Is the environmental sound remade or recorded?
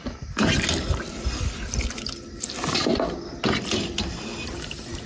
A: recorded